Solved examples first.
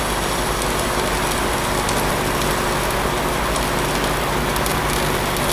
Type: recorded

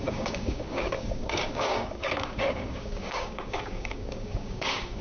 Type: remade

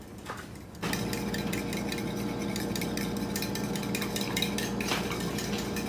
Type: recorded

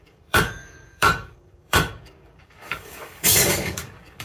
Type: remade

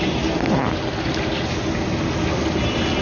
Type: recorded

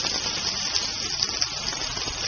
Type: recorded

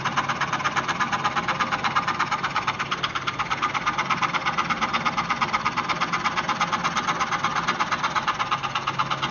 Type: recorded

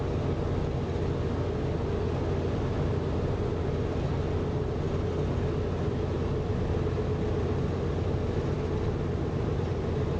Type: recorded